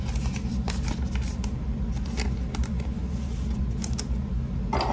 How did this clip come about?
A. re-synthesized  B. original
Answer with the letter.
B